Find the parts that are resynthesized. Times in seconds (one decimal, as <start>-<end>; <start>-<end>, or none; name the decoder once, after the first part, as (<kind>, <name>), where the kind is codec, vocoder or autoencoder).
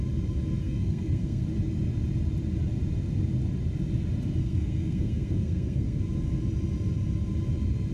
0.6-1.4 (codec, SNAC); 4.4-6.0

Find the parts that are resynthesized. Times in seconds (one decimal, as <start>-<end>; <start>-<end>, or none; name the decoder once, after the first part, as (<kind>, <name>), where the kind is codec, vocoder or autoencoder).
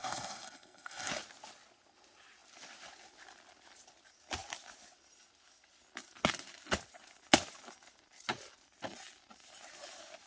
0.0-1.1 (codec, SNAC)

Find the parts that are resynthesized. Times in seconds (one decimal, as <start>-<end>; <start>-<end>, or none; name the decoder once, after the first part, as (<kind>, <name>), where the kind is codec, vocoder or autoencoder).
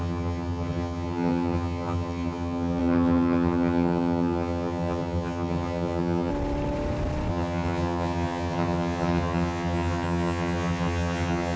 0.0-6.3 (vocoder, HiFi-GAN); 7.3-11.6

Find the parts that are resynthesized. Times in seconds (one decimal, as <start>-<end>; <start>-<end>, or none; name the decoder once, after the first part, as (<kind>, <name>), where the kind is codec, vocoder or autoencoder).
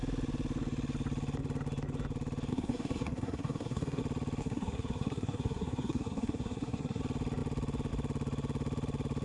2.5-4.0 (codec, SNAC); 4.4-7.0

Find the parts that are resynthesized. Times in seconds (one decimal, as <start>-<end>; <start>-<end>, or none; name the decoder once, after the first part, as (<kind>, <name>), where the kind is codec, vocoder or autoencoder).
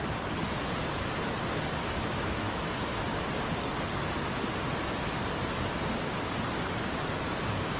2.0-3.0 (autoencoder, DAC-VAE)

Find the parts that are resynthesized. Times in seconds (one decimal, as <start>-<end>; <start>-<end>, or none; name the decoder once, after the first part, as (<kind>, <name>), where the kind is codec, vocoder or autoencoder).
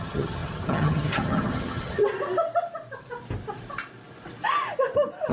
0.0-2.0 (vocoder, HiFi-GAN)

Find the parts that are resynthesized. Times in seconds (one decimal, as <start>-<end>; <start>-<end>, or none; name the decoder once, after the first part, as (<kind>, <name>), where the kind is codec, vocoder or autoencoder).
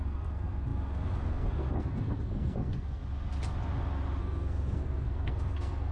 0.0-3.0 (codec, SNAC); 4.2-5.9